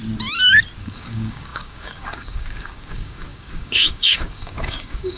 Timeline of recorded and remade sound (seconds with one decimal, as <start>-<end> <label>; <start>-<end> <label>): 0.0-0.8 recorded; 0.8-5.2 remade